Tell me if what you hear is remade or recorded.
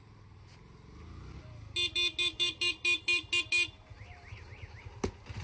recorded